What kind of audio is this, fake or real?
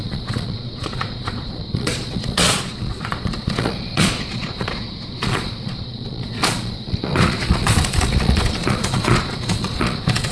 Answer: fake